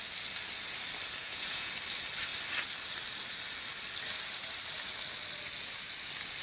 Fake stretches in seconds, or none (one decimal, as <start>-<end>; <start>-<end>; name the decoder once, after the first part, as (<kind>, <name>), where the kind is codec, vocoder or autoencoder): 1.2-1.7 (vocoder, Vocos)